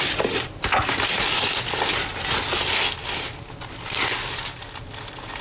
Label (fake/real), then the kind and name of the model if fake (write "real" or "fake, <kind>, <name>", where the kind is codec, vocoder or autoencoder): real